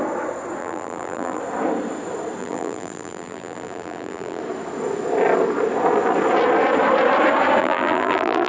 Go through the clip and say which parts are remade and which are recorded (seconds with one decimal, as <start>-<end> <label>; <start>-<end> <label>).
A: 0.0-0.6 recorded; 0.6-1.4 remade; 1.4-2.4 recorded; 2.4-4.4 remade; 4.4-7.6 recorded; 7.6-8.5 remade